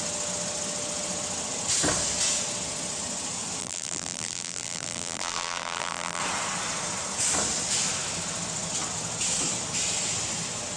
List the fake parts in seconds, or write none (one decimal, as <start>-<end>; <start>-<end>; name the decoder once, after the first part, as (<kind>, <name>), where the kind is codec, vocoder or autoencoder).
3.6-6.2 (vocoder, BigVGAN v2)